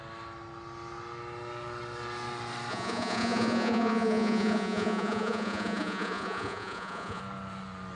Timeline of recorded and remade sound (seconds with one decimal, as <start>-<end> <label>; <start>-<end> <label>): 0.0-2.7 recorded; 2.7-7.2 remade; 7.2-8.0 recorded